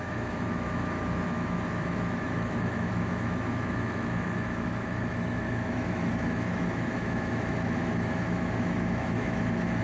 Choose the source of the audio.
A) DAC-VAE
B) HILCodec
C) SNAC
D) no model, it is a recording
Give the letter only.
A